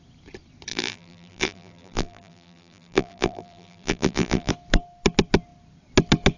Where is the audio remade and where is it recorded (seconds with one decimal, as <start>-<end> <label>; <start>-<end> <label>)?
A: 0.0-0.7 recorded; 0.7-4.5 remade; 4.5-6.4 recorded